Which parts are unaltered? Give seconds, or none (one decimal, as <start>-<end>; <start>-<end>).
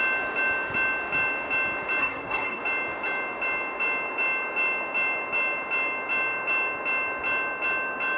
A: 0.0-2.0; 2.6-8.2